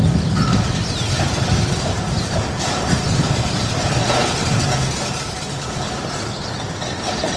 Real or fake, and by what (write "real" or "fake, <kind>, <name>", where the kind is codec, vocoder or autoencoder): real